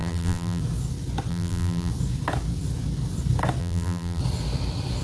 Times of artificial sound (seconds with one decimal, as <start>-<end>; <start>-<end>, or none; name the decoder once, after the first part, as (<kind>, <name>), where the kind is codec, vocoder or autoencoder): 0.0-0.6 (vocoder, BigVGAN v2); 1.3-1.9; 3.6-4.2